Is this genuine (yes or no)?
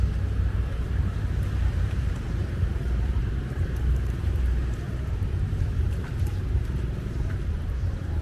no